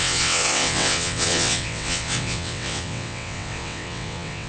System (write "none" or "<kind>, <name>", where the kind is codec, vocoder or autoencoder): vocoder, WaveNeXt